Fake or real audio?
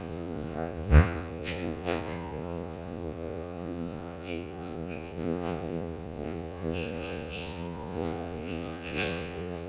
fake